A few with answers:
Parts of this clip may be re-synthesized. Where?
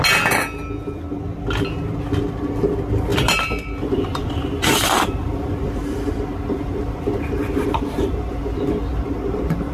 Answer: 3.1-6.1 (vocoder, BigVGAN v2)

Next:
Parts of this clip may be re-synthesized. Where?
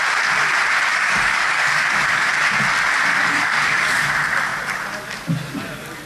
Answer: 0.9-2.3 (codec, DAC); 3.1-4.1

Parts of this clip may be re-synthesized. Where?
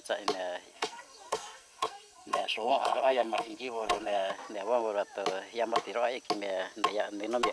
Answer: 0.7-4.3 (codec, SNAC)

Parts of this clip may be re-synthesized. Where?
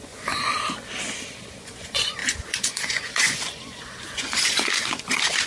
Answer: 0.0-0.5 (vocoder, Vocos); 1.5-5.5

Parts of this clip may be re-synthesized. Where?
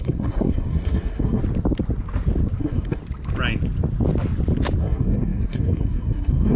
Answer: 0.0-1.4 (codec, SNAC); 2.6-3.0; 4.8-6.6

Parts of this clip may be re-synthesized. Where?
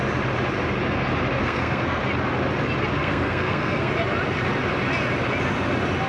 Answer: 1.4-2.0 (codec, SNAC); 3.0-3.9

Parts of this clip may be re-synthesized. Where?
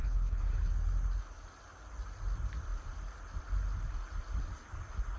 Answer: 0.0-0.7 (codec, HILCodec)